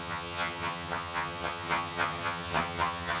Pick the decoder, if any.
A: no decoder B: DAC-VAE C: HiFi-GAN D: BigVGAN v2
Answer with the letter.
C